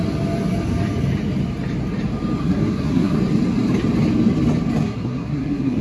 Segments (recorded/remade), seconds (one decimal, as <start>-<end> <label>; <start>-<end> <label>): 0.0-2.4 recorded; 2.4-3.2 remade; 3.2-4.8 recorded; 4.8-5.8 remade